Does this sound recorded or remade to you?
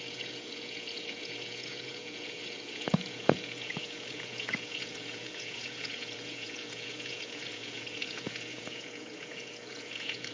remade